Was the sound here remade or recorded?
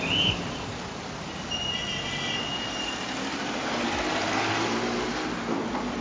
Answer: recorded